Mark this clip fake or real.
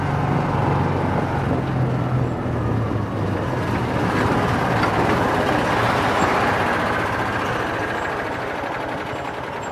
real